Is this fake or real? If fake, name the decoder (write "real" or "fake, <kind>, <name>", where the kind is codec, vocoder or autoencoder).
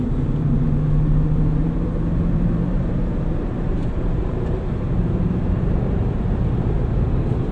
fake, vocoder, BigVGAN v2